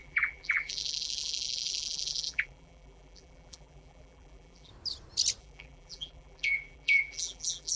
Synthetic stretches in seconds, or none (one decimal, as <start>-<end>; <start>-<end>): 0.0-4.7; 5.4-7.8